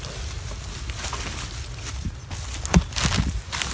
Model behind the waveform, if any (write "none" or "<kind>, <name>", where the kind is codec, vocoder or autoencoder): none